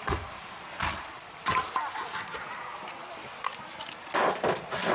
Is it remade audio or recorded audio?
recorded